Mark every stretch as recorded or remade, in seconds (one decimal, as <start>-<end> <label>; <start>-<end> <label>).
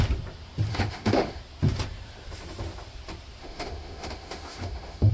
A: 0.0-0.7 recorded; 0.7-1.4 remade; 1.4-3.4 recorded; 3.4-5.1 remade